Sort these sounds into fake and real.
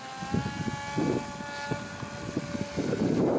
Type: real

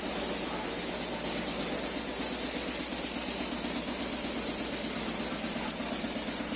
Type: real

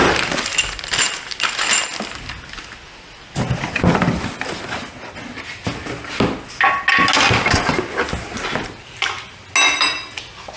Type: real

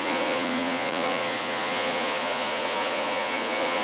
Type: fake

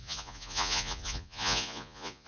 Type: fake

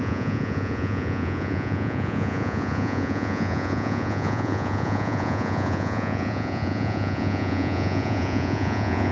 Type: fake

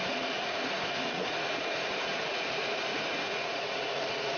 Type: fake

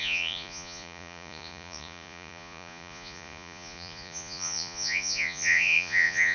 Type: fake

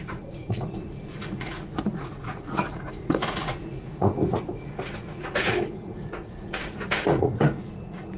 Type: fake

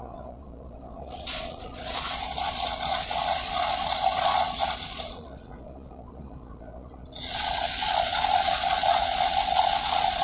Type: fake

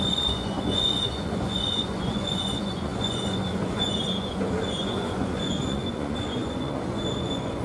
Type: fake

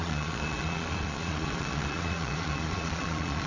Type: fake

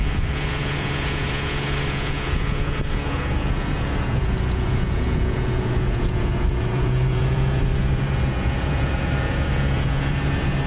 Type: fake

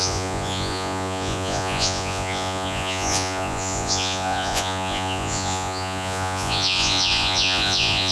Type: fake